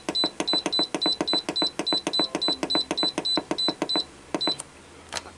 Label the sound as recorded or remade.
recorded